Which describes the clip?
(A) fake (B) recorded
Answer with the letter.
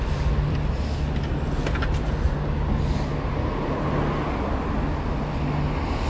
B